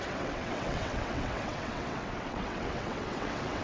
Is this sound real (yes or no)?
no